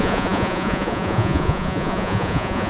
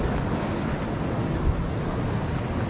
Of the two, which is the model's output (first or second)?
first